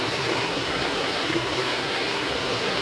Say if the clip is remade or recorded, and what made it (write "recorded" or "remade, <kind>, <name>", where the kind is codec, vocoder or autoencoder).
remade, codec, SNAC